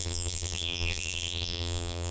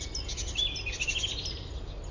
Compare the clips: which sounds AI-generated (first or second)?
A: first